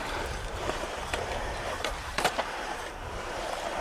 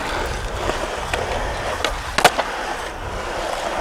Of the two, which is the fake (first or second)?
first